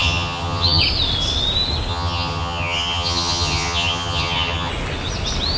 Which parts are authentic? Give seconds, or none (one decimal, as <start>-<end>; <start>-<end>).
0.8-1.9; 4.7-5.6